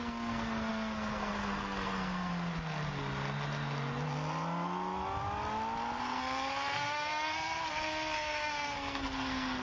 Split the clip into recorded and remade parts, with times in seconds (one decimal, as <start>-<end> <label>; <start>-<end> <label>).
0.0-2.3 remade; 2.3-6.0 recorded; 6.0-9.6 remade